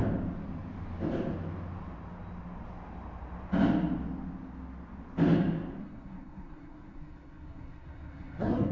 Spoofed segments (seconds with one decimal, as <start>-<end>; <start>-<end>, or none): 5.8-8.7